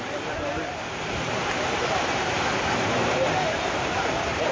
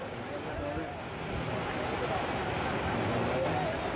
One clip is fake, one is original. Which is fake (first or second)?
first